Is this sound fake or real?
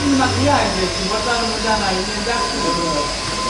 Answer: real